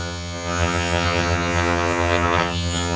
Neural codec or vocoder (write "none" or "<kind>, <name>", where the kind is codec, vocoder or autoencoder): vocoder, HiFi-GAN